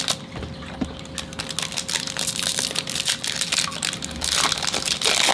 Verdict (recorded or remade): recorded